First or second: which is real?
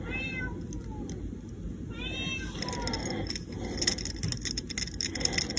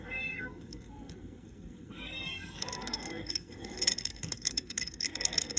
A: first